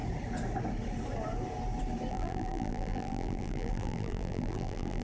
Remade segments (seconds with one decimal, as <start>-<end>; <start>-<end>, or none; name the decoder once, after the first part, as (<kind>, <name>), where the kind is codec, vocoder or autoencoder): 2.1-5.0 (vocoder, BigVGAN v2)